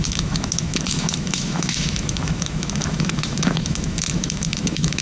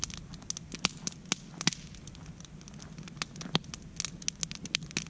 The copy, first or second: first